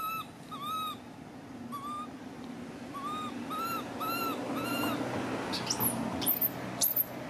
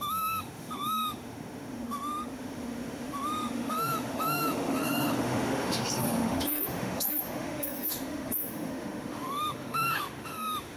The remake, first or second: second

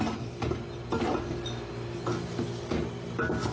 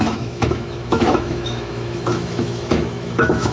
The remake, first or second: second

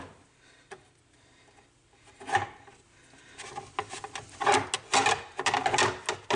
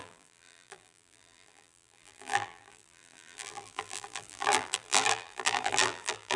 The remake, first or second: second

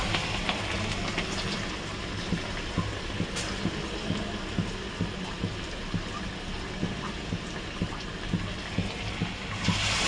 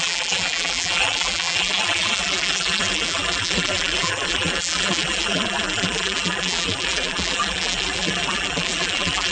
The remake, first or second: second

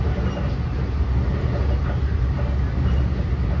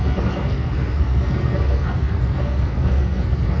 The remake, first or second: second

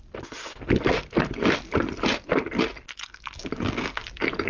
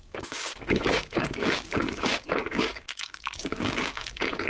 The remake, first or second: second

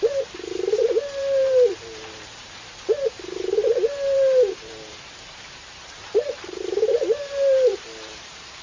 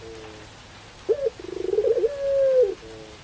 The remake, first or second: first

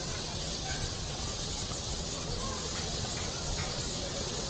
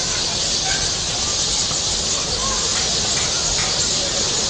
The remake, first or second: first